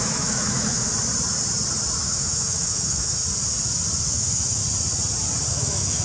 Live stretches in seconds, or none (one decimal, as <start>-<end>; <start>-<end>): 0.9-2.0; 3.2-4.0; 4.6-5.5